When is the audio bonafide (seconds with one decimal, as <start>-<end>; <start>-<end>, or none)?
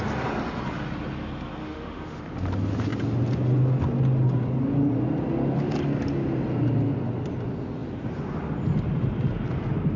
0.0-1.6; 2.2-10.0